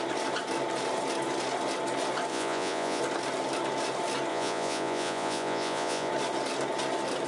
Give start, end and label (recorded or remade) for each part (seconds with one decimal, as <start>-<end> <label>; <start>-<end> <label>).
0.0-2.3 recorded; 2.3-3.0 remade; 3.0-4.3 recorded; 4.3-6.1 remade; 6.1-7.3 recorded